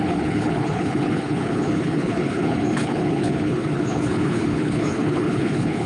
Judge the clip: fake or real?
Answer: fake